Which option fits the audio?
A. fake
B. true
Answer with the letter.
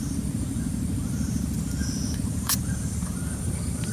A